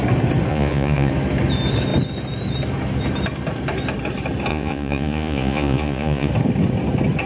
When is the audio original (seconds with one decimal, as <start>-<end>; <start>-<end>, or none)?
0.0-0.5; 1.1-4.5; 6.3-7.3